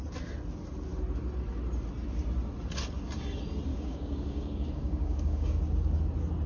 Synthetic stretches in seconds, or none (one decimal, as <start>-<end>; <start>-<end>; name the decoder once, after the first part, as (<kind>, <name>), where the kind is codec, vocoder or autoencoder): 3.7-5.5 (codec, DAC)